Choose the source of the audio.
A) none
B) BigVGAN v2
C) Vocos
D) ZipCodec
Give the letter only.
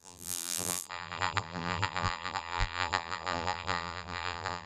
B